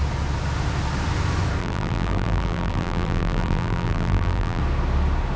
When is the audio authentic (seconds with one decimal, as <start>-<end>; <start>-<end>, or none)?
0.0-1.6; 4.6-5.4